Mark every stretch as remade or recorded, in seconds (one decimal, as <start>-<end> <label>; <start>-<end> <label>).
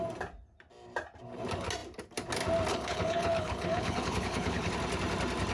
0.0-2.7 recorded; 2.7-4.7 remade; 4.7-5.5 recorded